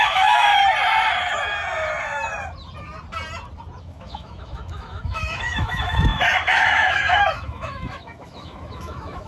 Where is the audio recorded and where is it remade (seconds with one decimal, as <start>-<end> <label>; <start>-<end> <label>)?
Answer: 0.0-0.5 remade; 0.5-3.8 recorded; 3.8-9.3 remade